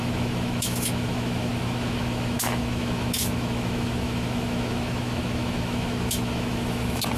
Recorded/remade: remade